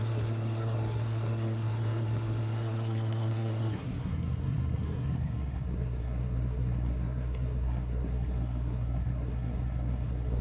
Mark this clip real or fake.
fake